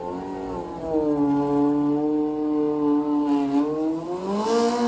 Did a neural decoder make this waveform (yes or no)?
no